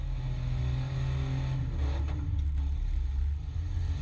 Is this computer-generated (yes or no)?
no